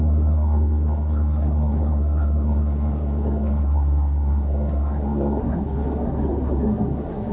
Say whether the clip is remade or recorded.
remade